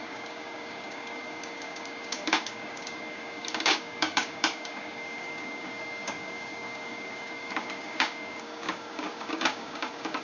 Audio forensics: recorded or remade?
remade